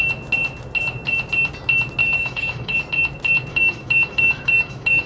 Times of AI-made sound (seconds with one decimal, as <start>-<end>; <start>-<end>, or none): 2.0-2.8; 3.5-5.1